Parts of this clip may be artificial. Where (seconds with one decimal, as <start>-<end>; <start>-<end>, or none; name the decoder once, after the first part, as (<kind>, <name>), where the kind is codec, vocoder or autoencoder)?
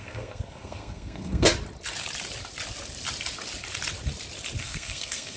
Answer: 0.0-1.5 (codec, SNAC); 4.6-5.4